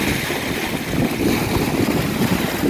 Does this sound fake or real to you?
real